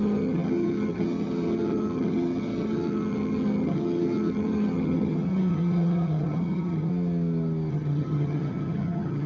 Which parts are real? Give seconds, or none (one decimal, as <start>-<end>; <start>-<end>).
6.9-7.7